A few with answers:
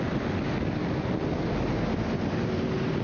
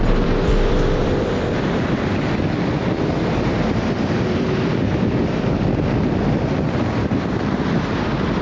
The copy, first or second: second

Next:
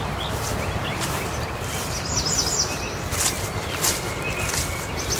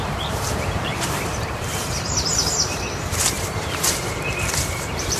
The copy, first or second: second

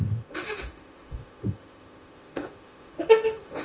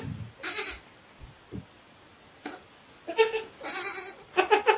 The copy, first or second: first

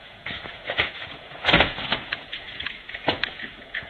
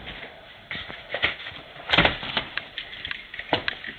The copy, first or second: first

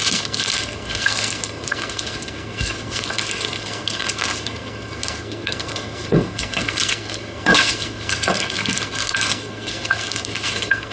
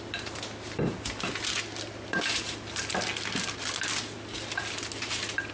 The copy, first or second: first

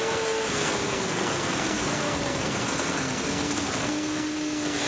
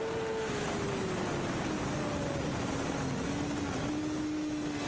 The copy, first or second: first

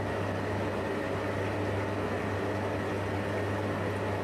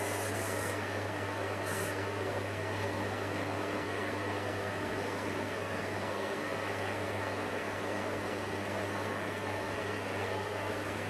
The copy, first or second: second